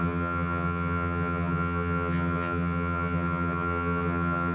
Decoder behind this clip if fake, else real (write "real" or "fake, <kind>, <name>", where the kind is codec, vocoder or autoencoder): fake, vocoder, HiFi-GAN